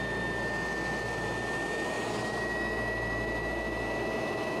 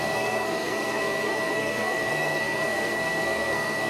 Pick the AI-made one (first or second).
second